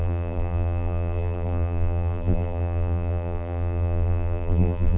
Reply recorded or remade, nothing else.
remade